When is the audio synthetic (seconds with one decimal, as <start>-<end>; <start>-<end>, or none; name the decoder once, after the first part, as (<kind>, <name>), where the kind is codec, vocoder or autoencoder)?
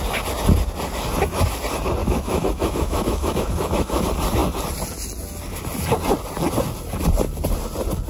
2.0-4.0 (autoencoder, DAC-VAE)